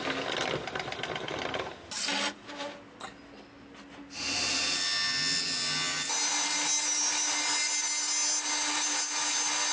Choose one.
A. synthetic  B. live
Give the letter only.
B